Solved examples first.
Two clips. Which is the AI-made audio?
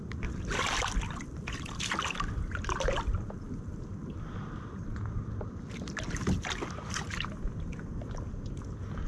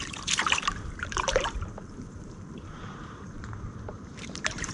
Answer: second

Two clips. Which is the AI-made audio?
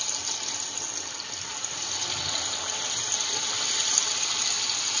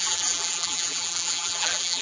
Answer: second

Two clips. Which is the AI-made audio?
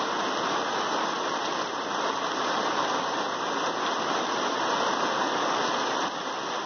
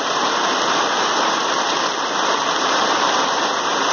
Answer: second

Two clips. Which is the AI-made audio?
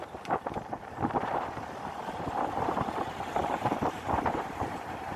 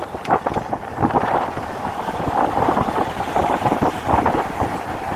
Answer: first